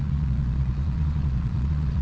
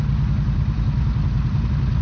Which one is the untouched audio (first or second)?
second